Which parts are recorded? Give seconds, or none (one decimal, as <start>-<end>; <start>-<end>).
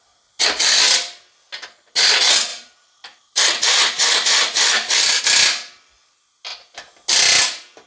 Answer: 0.0-2.5; 5.2-7.9